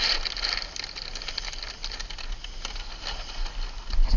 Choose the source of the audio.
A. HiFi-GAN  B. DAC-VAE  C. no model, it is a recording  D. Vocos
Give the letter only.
C